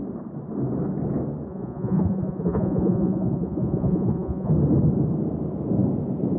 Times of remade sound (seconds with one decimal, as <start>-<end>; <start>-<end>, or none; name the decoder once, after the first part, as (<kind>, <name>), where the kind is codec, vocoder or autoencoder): 1.5-4.5 (vocoder, Vocos)